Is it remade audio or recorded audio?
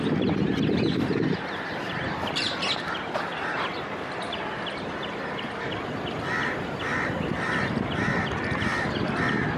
remade